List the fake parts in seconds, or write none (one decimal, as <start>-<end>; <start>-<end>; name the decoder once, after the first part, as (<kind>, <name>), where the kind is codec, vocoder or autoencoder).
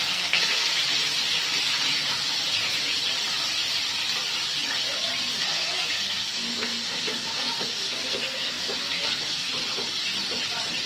0.0-0.7 (codec, SNAC); 5.4-9.5